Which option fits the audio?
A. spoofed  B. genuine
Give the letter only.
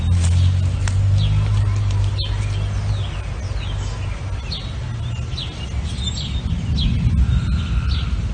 B